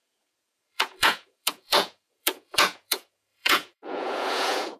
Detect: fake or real fake